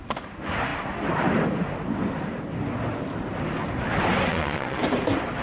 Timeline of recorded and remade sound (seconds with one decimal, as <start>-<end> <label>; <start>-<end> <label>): 0.0-4.3 recorded; 4.3-4.8 remade; 4.8-5.4 recorded